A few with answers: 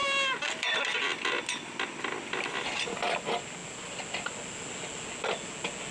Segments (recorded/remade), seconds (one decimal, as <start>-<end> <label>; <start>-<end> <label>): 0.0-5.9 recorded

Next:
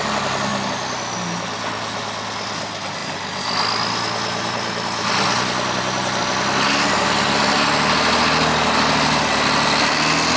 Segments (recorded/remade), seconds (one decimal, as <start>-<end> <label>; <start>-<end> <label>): 0.0-10.4 recorded

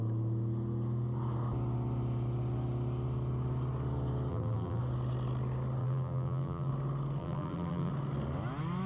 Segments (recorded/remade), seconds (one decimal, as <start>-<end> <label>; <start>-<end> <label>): 0.0-4.3 recorded; 4.3-4.8 remade; 4.8-5.8 recorded; 5.8-6.7 remade; 6.7-7.2 recorded; 7.2-7.9 remade; 7.9-8.9 recorded

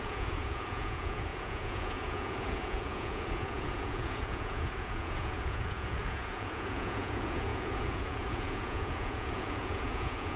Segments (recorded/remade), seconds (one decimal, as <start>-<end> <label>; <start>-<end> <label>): 0.0-10.4 remade